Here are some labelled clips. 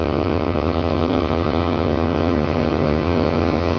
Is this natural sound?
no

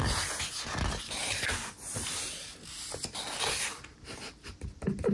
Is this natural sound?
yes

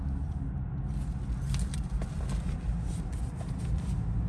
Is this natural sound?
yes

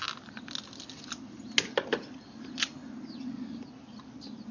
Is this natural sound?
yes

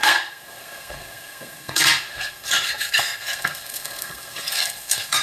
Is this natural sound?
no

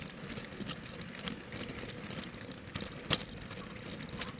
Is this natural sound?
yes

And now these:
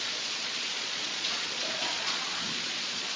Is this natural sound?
no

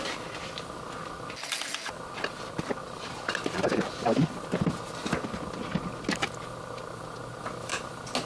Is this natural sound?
yes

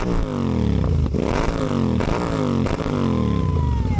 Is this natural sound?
yes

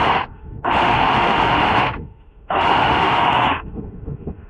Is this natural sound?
no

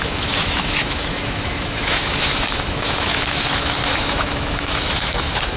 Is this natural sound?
no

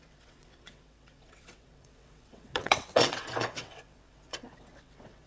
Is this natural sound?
no